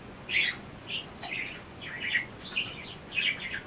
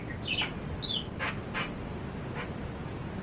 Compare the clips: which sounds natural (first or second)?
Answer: second